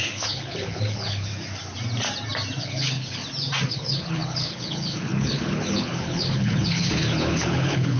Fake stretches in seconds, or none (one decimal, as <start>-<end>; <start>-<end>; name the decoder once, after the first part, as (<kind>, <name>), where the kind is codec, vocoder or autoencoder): 0.0-1.3 (codec, HILCodec); 2.6-3.2; 3.7-8.0